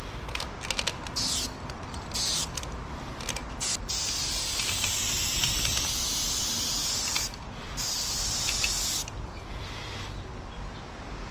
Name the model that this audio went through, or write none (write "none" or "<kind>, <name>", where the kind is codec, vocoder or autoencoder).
none